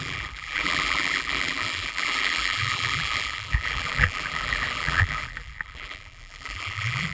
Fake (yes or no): yes